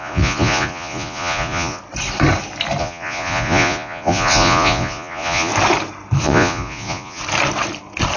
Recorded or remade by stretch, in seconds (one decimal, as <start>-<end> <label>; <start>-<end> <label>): 0.0-1.8 remade; 1.8-2.8 recorded; 2.8-5.5 remade; 5.5-6.2 recorded; 6.2-7.2 remade; 7.2-8.2 recorded